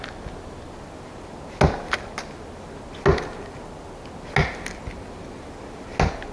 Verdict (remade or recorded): recorded